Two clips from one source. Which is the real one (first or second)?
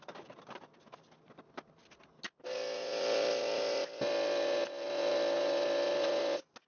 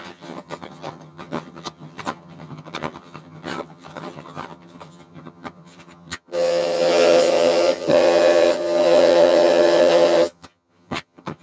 first